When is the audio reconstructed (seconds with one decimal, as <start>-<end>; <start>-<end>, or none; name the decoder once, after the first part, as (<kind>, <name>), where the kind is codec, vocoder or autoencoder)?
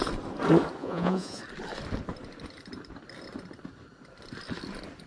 0.8-1.4 (vocoder, Vocos)